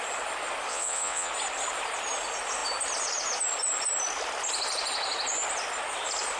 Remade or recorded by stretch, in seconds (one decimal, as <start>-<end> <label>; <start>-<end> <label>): 0.0-0.7 recorded; 0.7-1.3 remade; 1.3-6.4 recorded